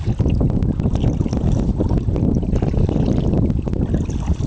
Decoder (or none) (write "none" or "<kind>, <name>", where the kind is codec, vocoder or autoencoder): none